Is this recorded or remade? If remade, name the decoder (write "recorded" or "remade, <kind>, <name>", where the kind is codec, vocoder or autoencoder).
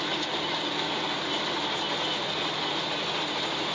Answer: recorded